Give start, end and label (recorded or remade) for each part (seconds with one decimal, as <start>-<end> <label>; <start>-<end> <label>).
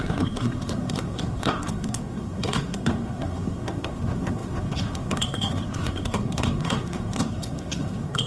0.0-8.3 remade